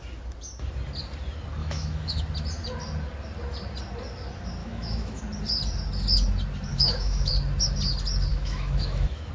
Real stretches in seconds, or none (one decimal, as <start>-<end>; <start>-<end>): 0.0-1.6; 2.2-4.6; 5.2-6.7; 7.3-8.3